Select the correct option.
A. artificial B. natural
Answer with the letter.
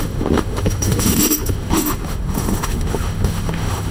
A